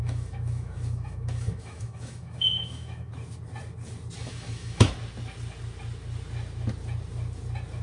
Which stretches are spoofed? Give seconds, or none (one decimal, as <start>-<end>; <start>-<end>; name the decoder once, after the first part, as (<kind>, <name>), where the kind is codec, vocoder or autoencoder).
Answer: 0.0-3.1 (autoencoder, DAC-VAE); 4.2-4.9